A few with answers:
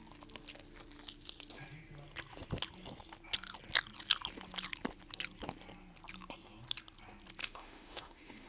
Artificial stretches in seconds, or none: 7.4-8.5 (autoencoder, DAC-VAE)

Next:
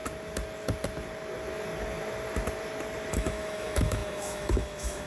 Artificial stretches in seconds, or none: 3.1-5.1 (autoencoder, DAC-VAE)

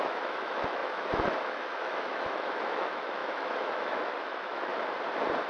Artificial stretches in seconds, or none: 0.0-4.7 (autoencoder, DAC-VAE)

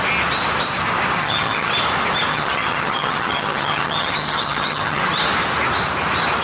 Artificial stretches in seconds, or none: 1.2-1.7 (vocoder, HiFi-GAN); 2.3-5.0

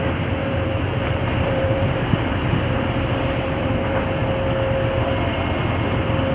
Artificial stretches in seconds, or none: 0.4-4.2 (vocoder, BigVGAN v2)

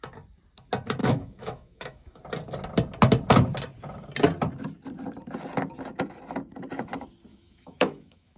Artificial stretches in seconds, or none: 1.0-2.2 (autoencoder, DAC-VAE); 7.3-8.4

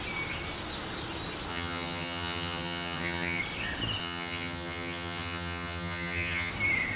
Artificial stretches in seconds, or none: 1.5-3.4 (vocoder, HiFi-GAN); 4.0-6.5